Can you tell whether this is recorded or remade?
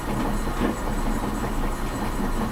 remade